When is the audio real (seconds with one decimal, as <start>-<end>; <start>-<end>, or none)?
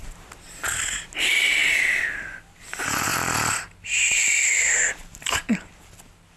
0.0-6.4